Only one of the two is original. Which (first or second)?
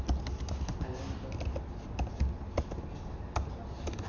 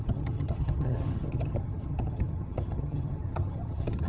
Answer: first